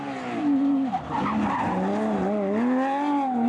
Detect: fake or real real